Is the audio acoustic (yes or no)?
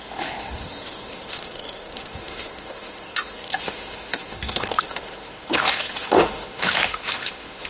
no